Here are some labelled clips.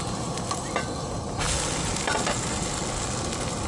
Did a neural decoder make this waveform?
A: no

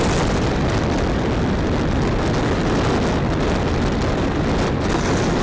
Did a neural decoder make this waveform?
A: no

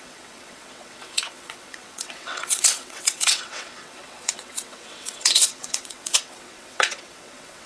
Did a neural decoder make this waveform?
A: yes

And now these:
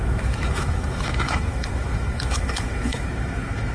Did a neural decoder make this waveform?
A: yes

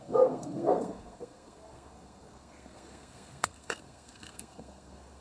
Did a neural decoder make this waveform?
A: yes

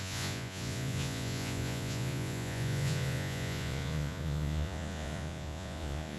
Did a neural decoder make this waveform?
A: yes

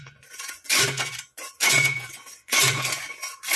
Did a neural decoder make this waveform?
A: yes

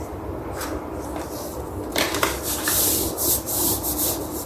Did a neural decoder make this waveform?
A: yes